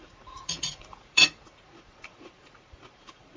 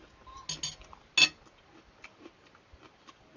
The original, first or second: second